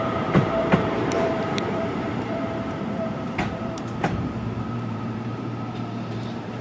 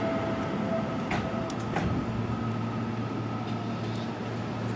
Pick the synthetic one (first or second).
first